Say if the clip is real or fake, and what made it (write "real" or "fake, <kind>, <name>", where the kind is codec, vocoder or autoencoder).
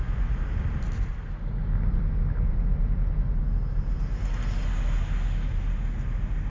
real